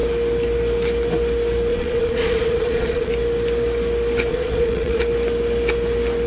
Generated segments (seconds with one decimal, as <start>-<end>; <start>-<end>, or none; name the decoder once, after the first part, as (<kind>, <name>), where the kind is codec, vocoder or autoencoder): 1.7-3.1 (vocoder, Vocos); 4.3-5.0